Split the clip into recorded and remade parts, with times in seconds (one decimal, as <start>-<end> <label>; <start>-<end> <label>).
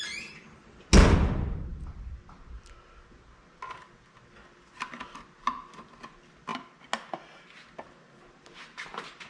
0.0-9.3 recorded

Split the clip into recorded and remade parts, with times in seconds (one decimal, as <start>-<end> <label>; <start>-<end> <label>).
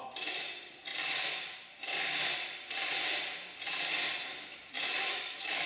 0.0-4.3 recorded; 4.3-5.7 remade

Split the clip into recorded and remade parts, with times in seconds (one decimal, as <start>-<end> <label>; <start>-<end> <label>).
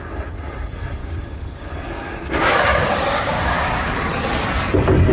0.0-1.0 recorded; 1.0-4.1 remade; 4.1-5.1 recorded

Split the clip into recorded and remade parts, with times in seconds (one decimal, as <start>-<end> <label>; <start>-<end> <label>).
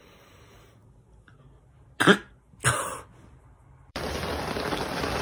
0.0-0.8 remade; 0.8-3.9 recorded; 3.9-5.2 remade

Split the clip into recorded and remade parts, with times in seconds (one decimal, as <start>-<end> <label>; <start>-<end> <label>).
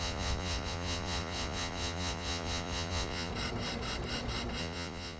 0.0-3.3 remade; 3.3-4.6 recorded; 4.6-5.2 remade